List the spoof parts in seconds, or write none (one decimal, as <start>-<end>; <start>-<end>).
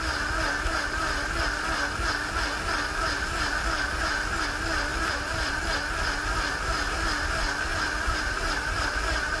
4.9-5.6; 7.7-8.8